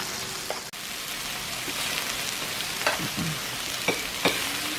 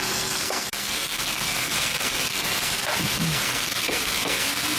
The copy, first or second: second